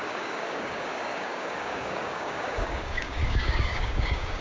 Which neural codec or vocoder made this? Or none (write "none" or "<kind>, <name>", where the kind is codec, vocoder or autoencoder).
codec, DAC